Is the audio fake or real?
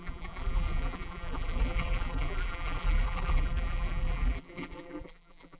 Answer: fake